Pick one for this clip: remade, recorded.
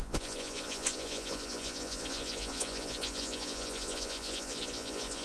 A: remade